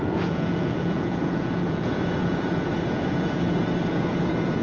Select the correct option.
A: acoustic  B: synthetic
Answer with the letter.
B